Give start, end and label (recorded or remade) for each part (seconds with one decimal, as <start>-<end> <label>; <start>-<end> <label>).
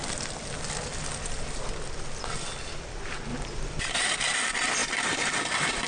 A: 0.0-3.3 recorded; 3.3-3.9 remade; 3.9-4.8 recorded; 4.8-5.9 remade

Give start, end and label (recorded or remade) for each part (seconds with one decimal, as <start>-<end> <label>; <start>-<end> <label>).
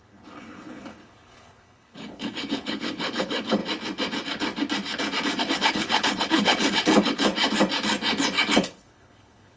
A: 0.0-3.6 remade; 3.6-5.4 recorded; 5.4-7.3 remade; 7.3-8.6 recorded; 8.6-9.6 remade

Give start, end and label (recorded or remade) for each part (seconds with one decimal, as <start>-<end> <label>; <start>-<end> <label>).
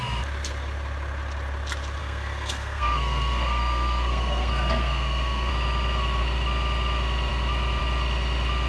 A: 0.0-2.0 recorded; 2.0-5.5 remade; 5.5-8.7 recorded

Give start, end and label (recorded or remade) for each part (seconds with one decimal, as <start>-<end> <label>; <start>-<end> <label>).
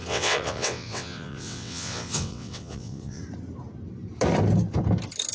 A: 0.0-3.2 remade; 3.2-5.3 recorded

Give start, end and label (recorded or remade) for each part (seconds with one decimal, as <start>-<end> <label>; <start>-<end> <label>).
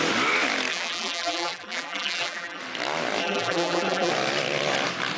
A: 0.0-0.7 recorded; 0.7-2.6 remade; 2.6-3.2 recorded; 3.2-4.1 remade; 4.1-5.2 recorded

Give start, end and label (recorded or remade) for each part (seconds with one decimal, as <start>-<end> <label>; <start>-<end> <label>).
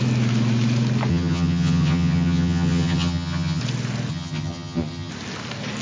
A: 0.0-1.1 recorded; 1.1-3.6 remade; 3.6-4.1 recorded; 4.1-5.1 remade; 5.1-5.8 recorded